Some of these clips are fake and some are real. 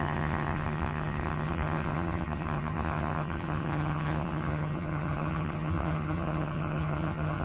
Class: fake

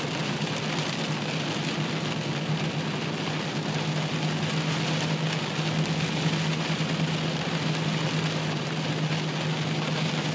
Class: real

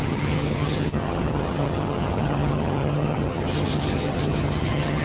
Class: fake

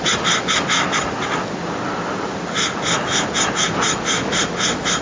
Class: real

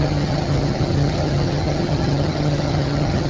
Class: fake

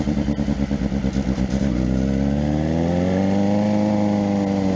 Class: real